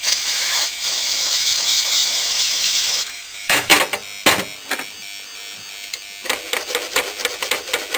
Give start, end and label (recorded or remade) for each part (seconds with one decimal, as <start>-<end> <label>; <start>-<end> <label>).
0.0-3.7 remade; 3.7-8.0 recorded